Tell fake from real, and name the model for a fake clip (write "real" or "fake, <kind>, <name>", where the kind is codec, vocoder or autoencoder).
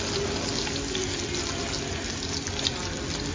real